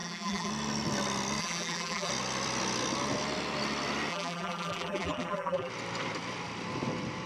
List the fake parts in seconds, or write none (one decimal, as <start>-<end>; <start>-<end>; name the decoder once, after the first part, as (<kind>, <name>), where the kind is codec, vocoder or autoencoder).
0.0-0.5 (vocoder, BigVGAN v2); 1.4-2.1; 4.1-5.7